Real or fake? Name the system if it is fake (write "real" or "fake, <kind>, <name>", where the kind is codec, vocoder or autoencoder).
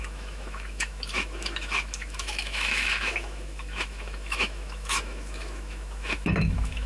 fake, autoencoder, DAC-VAE